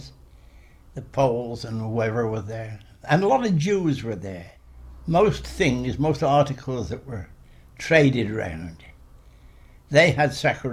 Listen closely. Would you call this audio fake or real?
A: real